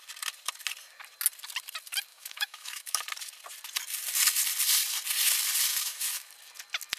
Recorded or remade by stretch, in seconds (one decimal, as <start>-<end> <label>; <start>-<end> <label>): 0.0-2.1 recorded; 2.1-3.0 remade; 3.0-5.7 recorded; 5.7-6.3 remade; 6.3-7.0 recorded